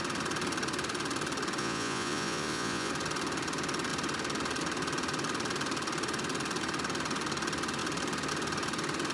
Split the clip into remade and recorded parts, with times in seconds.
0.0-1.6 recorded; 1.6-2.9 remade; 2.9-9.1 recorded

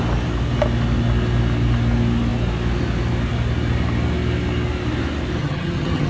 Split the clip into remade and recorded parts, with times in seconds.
0.0-5.4 recorded; 5.4-6.1 remade

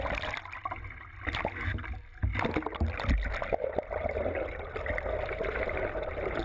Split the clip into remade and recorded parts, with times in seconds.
0.0-6.4 recorded

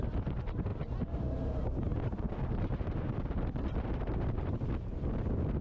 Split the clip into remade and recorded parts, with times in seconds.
0.0-5.6 recorded

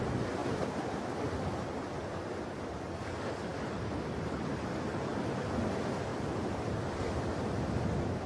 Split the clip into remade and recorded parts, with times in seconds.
0.0-3.5 recorded; 3.5-4.9 remade; 4.9-6.1 recorded; 6.1-7.2 remade; 7.2-8.3 recorded

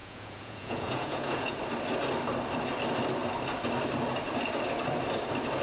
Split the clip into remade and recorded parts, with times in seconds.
0.0-1.6 remade; 1.6-5.6 recorded

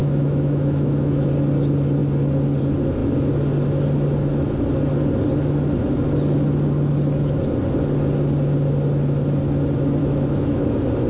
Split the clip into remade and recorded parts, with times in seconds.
0.0-1.3 remade; 1.3-10.0 recorded; 10.0-10.6 remade; 10.6-11.1 recorded